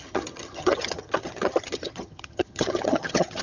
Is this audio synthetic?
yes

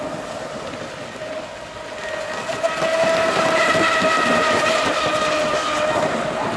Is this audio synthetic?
no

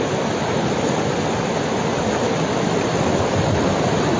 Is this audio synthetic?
no